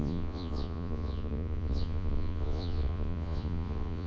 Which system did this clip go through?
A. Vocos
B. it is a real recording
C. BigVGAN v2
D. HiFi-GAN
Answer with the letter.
A